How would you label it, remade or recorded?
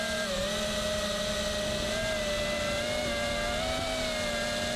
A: recorded